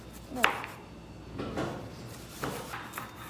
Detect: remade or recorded recorded